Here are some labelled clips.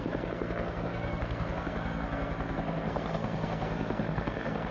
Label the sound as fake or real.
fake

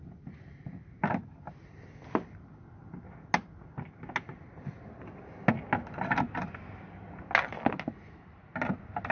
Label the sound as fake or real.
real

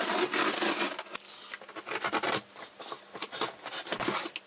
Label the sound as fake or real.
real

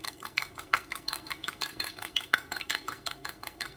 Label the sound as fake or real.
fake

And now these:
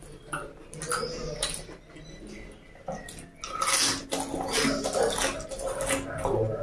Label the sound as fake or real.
real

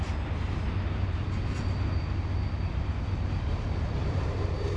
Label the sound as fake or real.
real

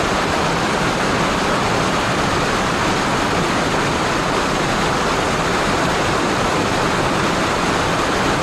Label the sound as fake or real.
real